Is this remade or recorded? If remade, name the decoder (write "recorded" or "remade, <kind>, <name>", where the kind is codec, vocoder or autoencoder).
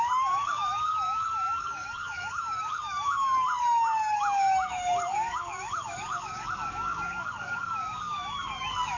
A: remade, codec, DAC